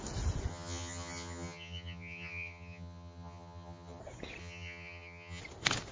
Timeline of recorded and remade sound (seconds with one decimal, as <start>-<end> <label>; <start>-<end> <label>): 0.0-0.5 recorded; 0.5-4.0 remade; 4.0-4.4 recorded; 4.4-5.4 remade; 5.4-5.9 recorded